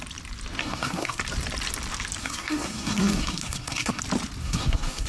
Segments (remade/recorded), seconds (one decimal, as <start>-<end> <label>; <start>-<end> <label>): 0.0-0.6 recorded; 0.6-1.2 remade; 1.2-2.2 recorded; 2.2-4.0 remade; 4.0-4.4 recorded; 4.4-5.1 remade